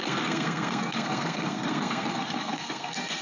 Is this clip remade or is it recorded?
remade